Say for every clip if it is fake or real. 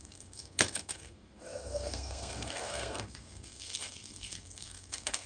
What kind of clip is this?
fake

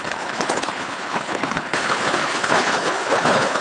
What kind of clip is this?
fake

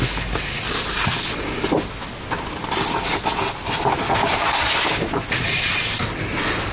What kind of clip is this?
real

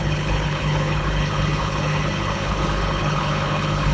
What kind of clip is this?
fake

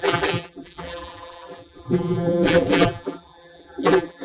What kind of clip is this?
fake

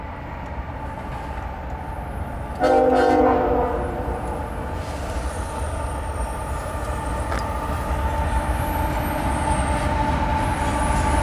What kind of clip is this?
real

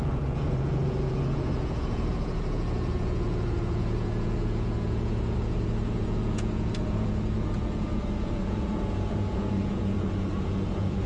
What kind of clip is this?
fake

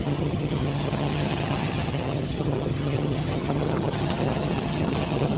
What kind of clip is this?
fake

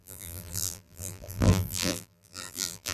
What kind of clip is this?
fake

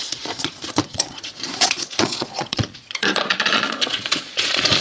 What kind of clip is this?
fake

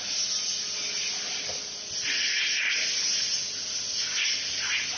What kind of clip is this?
real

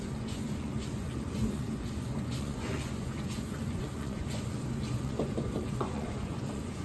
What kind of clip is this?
fake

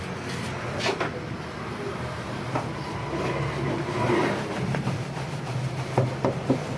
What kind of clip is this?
real